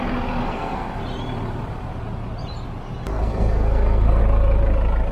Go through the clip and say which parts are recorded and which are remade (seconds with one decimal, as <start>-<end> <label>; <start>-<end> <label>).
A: 0.0-0.4 recorded; 0.4-1.0 remade; 1.0-3.1 recorded; 3.1-4.2 remade; 4.2-5.1 recorded